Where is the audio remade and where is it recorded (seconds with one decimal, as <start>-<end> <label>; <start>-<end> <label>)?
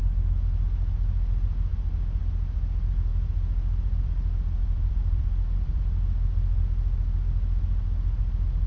0.0-4.6 recorded; 4.6-5.8 remade; 5.8-8.7 recorded